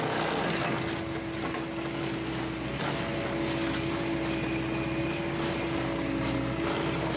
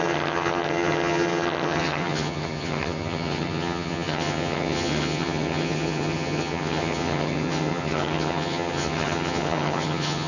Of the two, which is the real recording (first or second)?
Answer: first